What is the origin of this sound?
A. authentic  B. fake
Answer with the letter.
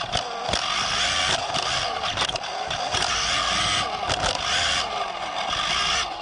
A